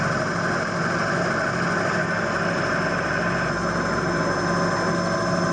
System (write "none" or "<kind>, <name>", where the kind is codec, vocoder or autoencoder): none